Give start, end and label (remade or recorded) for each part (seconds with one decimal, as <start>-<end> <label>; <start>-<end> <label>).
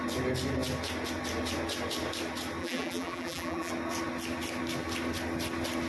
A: 0.0-2.6 recorded; 2.6-3.7 remade; 3.7-5.9 recorded